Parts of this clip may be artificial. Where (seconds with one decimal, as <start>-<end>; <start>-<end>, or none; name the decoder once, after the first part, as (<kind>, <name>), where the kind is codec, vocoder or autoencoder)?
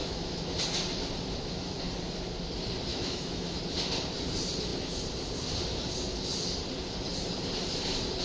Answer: 0.0-0.5 (autoencoder, DAC-VAE); 2.9-3.6